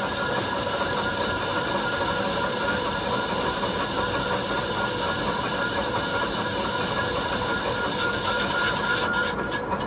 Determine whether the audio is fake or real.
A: real